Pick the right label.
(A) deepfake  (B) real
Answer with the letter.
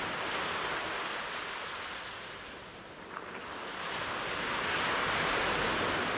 B